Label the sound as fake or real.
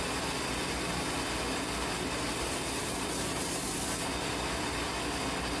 real